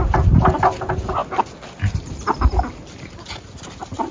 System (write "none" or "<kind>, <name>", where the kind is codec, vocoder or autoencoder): none